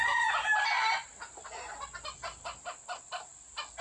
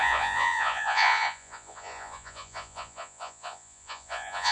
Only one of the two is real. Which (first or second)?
first